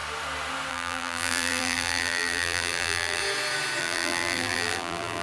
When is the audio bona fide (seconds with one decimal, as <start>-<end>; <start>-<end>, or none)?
0.0-0.7; 3.2-3.8